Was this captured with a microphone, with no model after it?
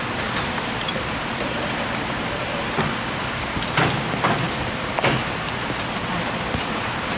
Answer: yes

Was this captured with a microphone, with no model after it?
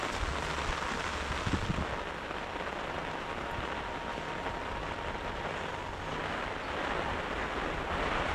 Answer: yes